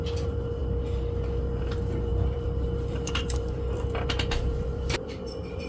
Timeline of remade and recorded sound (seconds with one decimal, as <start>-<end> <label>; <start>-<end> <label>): 0.0-2.1 recorded; 2.1-5.7 remade

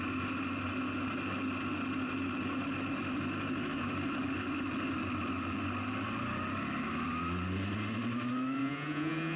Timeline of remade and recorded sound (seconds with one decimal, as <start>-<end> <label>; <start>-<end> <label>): 0.0-8.6 recorded; 8.6-9.4 remade

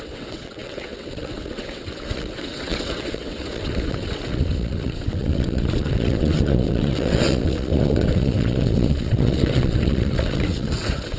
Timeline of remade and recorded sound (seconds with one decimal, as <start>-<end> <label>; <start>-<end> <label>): 0.0-11.2 remade

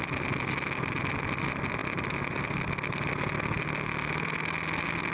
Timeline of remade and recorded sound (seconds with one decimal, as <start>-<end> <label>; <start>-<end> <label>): 0.0-5.1 recorded

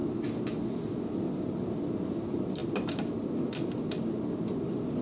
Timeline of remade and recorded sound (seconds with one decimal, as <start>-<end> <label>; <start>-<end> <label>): 0.0-5.0 recorded

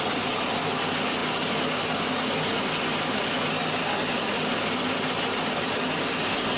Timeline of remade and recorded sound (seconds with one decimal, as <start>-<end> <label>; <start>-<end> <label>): 0.0-6.6 recorded

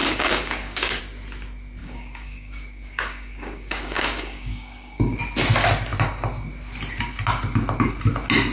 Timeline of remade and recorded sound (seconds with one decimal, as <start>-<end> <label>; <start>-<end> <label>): 0.0-1.0 remade; 1.0-1.8 recorded; 1.8-5.2 remade; 5.2-8.5 recorded

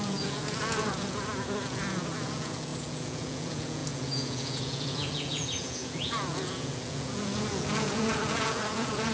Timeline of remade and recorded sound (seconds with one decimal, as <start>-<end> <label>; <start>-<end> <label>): 0.0-9.1 remade